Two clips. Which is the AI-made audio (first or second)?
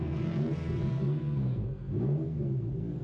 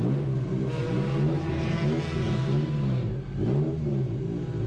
first